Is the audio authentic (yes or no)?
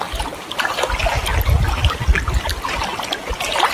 yes